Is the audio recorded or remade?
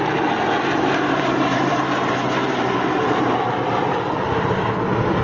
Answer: remade